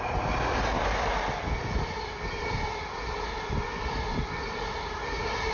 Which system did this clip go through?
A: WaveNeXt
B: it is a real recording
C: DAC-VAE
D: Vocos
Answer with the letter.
B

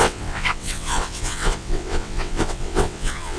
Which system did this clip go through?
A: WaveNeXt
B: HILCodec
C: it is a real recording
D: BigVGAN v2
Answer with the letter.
A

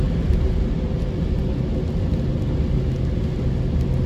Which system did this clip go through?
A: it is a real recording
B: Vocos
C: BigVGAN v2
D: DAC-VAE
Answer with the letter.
A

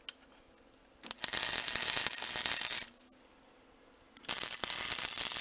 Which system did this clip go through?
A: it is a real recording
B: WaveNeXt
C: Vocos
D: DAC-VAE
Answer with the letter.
A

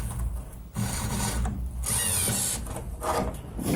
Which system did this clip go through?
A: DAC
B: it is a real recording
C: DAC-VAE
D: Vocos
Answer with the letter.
B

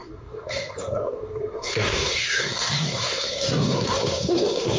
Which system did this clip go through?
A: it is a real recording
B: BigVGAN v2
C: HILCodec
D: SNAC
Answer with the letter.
D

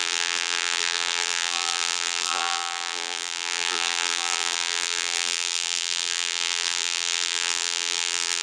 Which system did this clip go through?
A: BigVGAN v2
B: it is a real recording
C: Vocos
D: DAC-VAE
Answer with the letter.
A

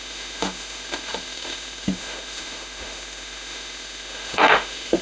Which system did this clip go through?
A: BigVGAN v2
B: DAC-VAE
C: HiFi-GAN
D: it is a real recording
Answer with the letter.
B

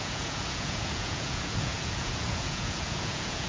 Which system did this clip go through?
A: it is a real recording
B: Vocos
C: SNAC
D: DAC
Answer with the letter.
B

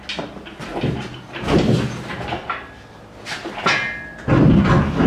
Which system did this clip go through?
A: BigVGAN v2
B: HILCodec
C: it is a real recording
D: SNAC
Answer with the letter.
C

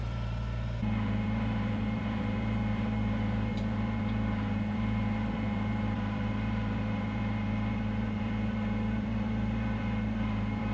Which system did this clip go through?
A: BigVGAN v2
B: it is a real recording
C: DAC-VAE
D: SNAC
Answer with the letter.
A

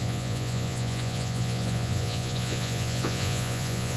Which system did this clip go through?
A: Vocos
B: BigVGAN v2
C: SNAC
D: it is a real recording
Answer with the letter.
A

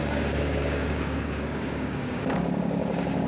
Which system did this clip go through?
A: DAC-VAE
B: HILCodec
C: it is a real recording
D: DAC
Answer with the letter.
D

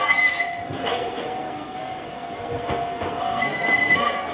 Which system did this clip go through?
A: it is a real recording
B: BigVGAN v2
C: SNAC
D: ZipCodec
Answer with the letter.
C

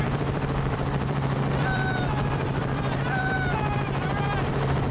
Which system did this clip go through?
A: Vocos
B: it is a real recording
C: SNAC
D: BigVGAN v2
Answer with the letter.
D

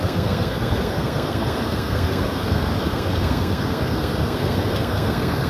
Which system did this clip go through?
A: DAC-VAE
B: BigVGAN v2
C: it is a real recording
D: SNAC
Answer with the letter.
D